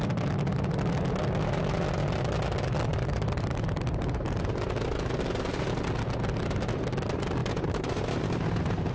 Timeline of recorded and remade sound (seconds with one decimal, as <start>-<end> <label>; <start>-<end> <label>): 0.0-2.9 recorded; 2.9-4.4 remade; 4.4-7.4 recorded; 7.4-8.9 remade